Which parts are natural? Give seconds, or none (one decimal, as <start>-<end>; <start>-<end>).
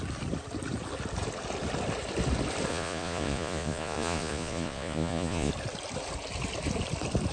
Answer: 0.0-2.7; 5.5-7.3